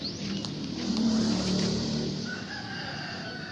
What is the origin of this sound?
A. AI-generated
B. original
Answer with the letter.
A